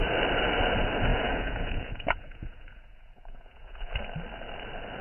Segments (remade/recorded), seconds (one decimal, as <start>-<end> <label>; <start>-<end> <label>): 0.0-1.1 recorded; 1.1-3.9 remade; 3.9-5.0 recorded